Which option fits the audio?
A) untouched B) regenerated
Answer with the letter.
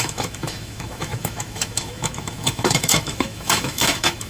B